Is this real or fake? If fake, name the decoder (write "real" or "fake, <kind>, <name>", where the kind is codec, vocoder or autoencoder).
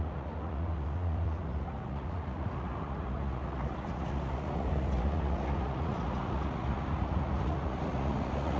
fake, vocoder, Vocos